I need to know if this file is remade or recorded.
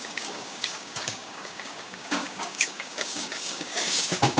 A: remade